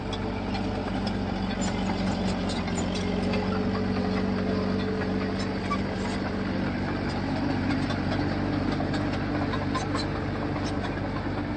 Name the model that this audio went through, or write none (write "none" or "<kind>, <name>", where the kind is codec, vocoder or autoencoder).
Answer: none